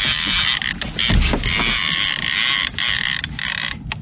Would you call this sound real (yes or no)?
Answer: yes